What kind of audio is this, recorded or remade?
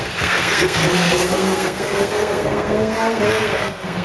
remade